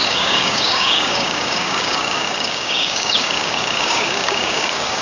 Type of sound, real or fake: fake